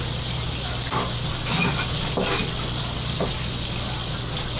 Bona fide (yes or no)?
yes